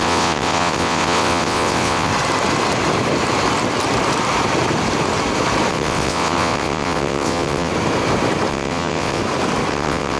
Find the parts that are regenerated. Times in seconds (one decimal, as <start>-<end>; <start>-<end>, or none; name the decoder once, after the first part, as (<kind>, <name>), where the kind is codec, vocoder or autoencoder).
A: 0.0-2.1 (vocoder, WaveNeXt); 5.7-7.7; 8.5-9.2; 9.7-10.2